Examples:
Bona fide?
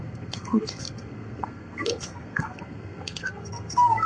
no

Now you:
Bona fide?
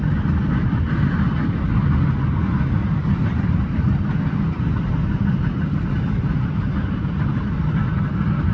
yes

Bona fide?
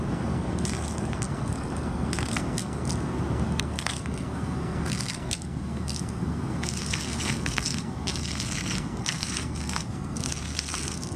no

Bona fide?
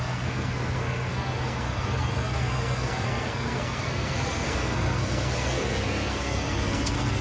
no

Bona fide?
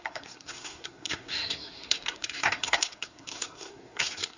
no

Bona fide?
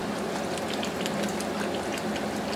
yes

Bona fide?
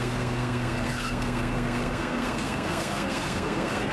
no